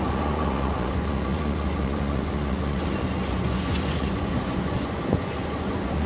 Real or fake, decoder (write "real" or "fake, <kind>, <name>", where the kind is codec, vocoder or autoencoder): fake, vocoder, Vocos